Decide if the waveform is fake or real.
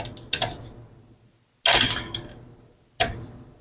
real